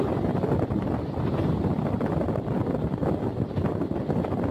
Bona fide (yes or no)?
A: yes